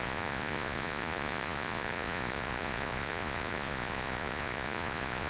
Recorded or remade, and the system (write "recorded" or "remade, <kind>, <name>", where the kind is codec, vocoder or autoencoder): remade, vocoder, Vocos